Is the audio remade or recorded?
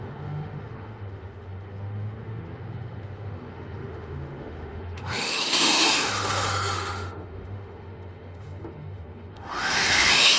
remade